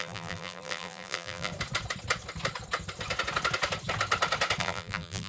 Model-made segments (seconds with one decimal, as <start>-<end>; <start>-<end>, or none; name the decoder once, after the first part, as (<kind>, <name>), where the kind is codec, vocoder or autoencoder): 0.0-1.5 (vocoder, BigVGAN v2); 4.6-5.3